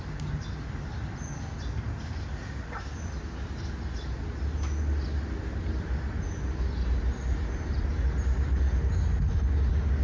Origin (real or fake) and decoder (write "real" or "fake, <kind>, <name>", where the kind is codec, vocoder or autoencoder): real